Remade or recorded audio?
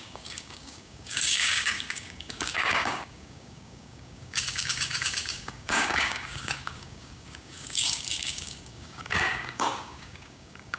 remade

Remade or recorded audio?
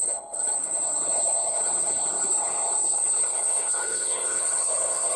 remade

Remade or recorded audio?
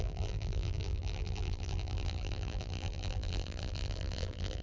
remade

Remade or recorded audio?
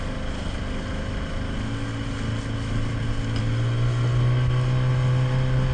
recorded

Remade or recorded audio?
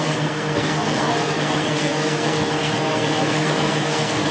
remade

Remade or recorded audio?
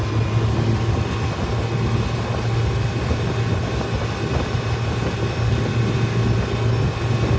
recorded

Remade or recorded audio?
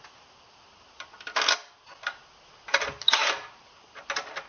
recorded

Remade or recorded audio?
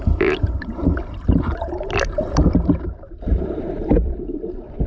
remade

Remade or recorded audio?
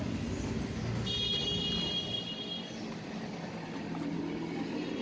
recorded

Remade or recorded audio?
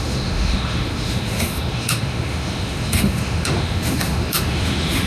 remade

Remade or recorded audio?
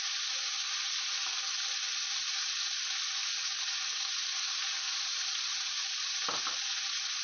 recorded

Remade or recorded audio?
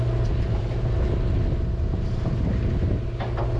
recorded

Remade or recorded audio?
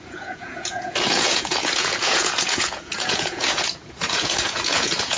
remade